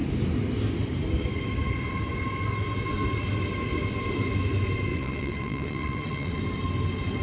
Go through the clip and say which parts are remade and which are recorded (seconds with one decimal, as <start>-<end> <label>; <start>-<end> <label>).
0.0-4.9 recorded; 4.9-6.4 remade; 6.4-7.2 recorded